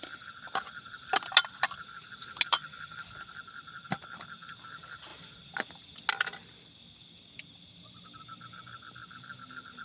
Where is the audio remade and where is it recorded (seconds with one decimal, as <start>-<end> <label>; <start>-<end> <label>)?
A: 0.0-9.8 recorded